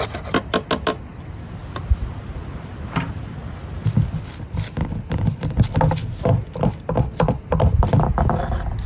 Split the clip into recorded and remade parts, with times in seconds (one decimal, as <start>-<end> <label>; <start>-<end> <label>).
0.0-8.9 recorded